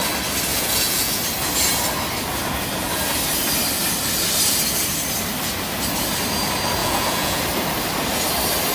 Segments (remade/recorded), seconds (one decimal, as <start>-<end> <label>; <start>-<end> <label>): 0.0-0.5 recorded; 0.5-1.2 remade; 1.2-6.8 recorded; 6.8-7.4 remade; 7.4-8.7 recorded